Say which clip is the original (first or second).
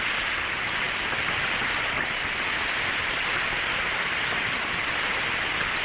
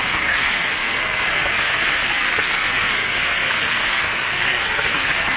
first